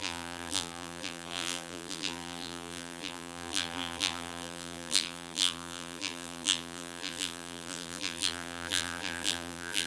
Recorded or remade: remade